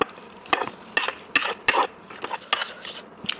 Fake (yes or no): no